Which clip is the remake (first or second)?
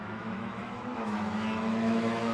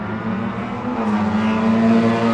first